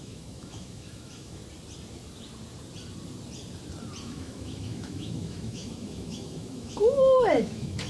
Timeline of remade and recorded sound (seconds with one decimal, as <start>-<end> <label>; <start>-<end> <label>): 0.0-1.4 remade; 1.4-4.0 recorded; 4.0-7.9 remade